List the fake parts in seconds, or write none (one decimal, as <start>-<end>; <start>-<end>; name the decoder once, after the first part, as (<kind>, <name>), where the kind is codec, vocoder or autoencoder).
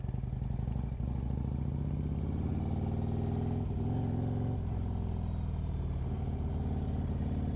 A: none